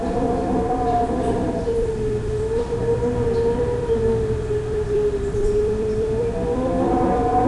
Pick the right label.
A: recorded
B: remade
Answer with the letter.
B